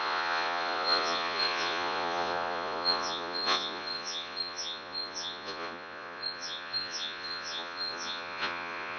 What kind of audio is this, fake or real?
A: fake